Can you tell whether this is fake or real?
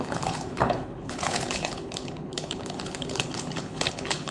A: fake